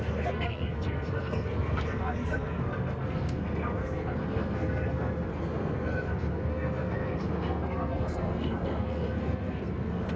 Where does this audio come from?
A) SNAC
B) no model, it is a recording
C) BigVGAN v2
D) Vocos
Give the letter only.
A